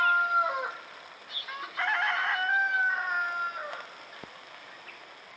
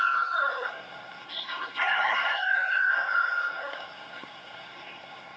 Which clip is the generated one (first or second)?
second